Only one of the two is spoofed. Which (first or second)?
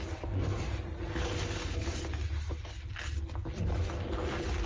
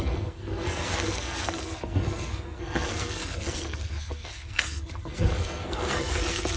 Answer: second